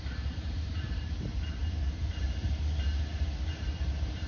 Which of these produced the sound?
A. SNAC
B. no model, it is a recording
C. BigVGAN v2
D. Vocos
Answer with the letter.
C